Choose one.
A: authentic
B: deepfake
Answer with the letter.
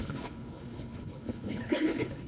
B